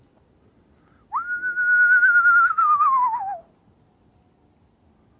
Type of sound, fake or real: real